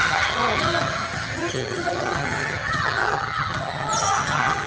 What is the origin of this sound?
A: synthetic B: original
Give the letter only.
A